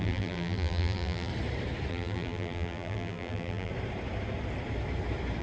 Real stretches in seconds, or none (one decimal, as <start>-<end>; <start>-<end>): 1.3-1.9; 3.7-5.4